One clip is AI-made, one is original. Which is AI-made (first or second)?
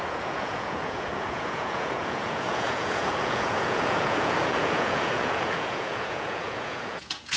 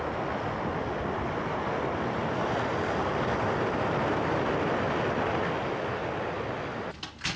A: first